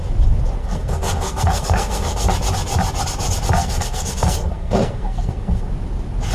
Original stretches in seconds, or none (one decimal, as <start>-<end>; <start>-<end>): 0.0-0.6; 2.3-3.6; 5.7-6.3